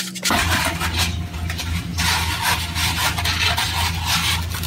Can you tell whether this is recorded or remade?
recorded